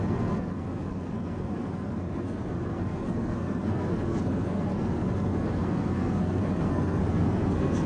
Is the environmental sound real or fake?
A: fake